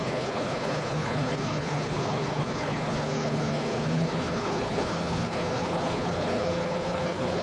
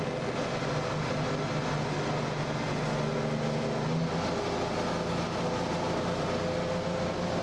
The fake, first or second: first